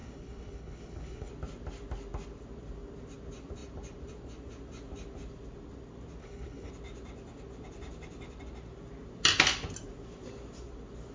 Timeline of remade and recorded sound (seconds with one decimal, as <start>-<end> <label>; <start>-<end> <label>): 0.0-1.3 remade; 1.3-6.2 recorded; 6.2-6.7 remade; 6.7-11.1 recorded